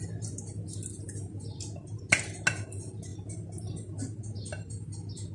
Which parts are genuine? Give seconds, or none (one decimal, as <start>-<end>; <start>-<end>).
0.0-5.3